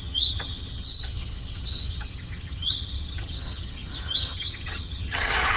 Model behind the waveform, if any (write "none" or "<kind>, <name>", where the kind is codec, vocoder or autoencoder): vocoder, HiFi-GAN